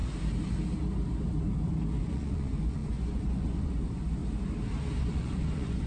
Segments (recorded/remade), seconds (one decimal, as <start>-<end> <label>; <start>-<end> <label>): 0.0-2.0 recorded; 2.0-4.2 remade; 4.2-5.0 recorded; 5.0-5.9 remade